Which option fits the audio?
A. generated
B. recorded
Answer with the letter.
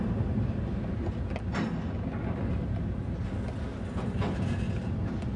B